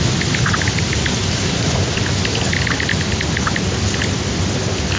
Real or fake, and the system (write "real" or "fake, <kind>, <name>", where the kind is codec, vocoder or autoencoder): real